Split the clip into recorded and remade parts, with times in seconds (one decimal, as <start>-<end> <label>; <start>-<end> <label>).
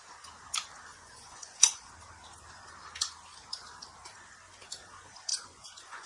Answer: 0.0-0.9 recorded; 0.9-1.9 remade; 1.9-5.3 recorded; 5.3-6.1 remade